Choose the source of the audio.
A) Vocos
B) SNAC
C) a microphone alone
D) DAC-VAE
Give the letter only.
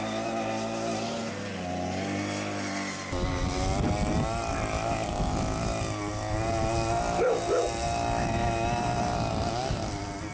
C